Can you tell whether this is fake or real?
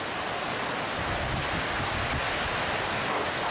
real